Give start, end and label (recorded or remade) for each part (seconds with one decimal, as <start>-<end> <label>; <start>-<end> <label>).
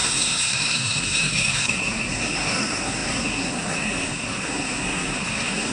0.0-5.7 remade